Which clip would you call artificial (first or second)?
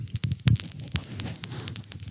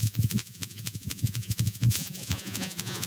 second